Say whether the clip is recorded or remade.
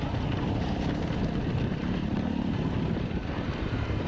recorded